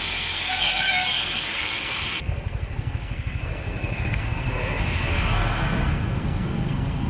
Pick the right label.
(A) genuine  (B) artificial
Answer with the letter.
B